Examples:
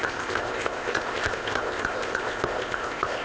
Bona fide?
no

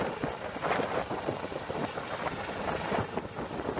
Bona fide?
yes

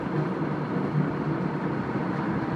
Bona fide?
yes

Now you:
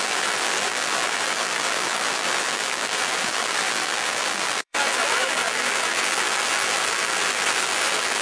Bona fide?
no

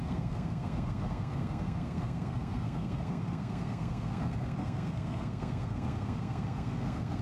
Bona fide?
no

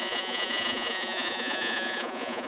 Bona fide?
no